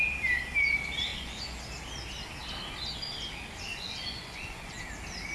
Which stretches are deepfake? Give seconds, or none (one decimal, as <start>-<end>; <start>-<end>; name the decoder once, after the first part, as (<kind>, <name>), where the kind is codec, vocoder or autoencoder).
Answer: 1.1-1.6 (vocoder, Vocos); 3.7-4.8